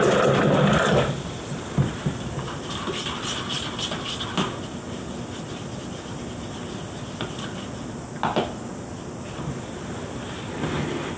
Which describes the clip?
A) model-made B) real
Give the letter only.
B